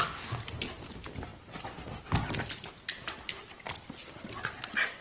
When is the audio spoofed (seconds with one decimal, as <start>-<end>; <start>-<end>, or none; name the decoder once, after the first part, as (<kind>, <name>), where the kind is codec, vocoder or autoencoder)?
none